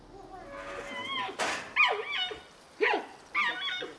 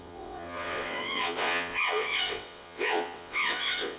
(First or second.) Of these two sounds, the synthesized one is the second